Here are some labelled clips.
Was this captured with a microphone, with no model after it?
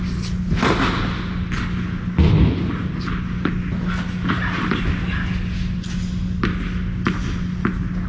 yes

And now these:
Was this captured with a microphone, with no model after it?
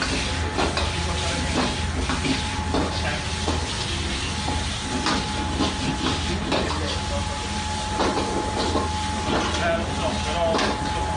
yes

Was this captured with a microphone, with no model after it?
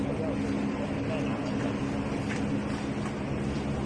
yes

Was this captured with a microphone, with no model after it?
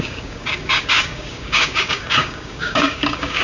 no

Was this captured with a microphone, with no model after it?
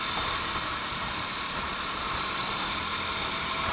no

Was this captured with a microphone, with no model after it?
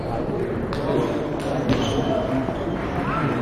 yes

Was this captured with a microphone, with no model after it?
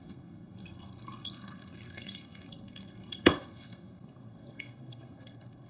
no